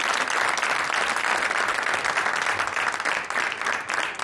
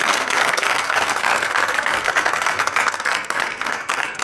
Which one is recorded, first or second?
first